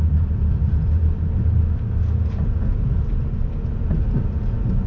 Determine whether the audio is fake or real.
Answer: real